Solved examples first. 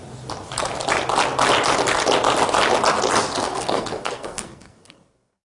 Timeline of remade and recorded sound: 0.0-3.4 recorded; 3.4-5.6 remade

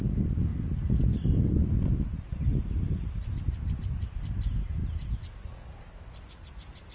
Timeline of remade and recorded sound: 0.0-6.9 recorded

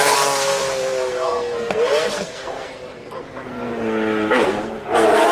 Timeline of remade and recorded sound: 0.0-5.3 remade

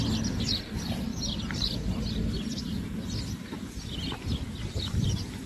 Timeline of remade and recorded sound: 0.0-5.5 recorded